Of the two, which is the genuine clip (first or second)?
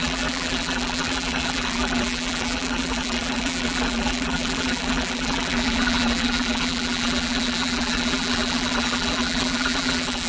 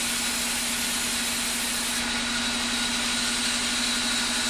second